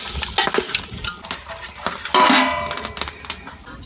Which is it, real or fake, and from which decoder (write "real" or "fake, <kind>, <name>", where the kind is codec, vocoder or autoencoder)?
real